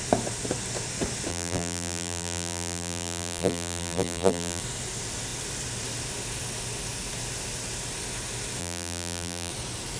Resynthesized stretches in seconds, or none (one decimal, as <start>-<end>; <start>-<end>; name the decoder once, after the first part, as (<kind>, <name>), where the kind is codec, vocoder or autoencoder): 1.3-4.6 (vocoder, BigVGAN v2); 8.6-9.5